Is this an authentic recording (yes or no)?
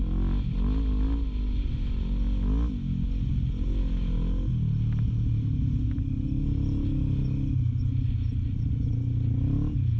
yes